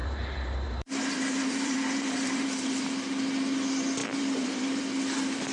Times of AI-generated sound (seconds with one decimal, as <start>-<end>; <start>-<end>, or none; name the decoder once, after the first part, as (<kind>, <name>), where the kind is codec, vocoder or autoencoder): 0.0-2.8 (vocoder, BigVGAN v2); 4.0-4.8